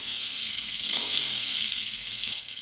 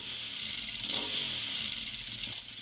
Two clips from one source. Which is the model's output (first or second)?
first